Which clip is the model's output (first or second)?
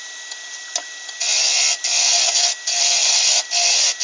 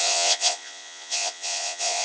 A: second